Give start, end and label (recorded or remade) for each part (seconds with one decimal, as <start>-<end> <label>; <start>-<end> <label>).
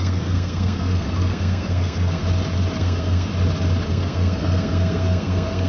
0.0-2.2 remade; 2.2-2.8 recorded; 2.8-3.3 remade; 3.3-3.9 recorded; 3.9-5.7 remade